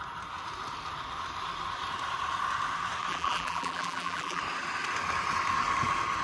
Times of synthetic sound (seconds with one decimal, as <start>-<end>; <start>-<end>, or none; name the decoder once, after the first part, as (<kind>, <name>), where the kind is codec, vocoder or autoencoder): 3.1-4.4 (vocoder, BigVGAN v2)